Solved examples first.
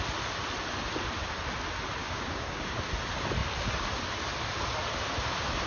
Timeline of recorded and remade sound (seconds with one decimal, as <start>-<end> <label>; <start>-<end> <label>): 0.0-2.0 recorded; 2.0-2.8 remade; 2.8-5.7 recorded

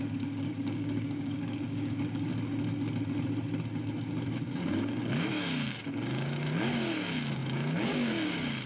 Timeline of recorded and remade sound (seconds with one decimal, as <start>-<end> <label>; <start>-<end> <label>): 0.0-2.3 remade; 2.3-4.3 recorded; 4.3-8.7 remade

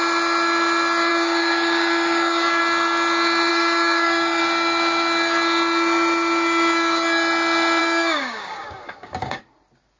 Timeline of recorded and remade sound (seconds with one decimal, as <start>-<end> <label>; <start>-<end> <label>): 0.0-1.1 recorded; 1.1-2.6 remade; 2.6-3.5 recorded; 3.5-4.4 remade; 4.4-7.8 recorded; 7.8-9.4 remade; 9.4-10.0 recorded

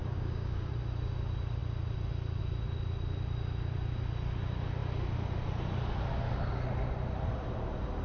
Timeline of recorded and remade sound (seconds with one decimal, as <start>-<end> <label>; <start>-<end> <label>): 0.0-0.7 remade; 0.7-8.0 recorded